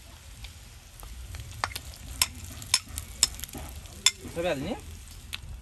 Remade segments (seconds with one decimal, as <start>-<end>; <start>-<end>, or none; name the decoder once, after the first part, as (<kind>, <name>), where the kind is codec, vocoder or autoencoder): none